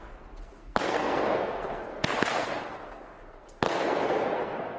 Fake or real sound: fake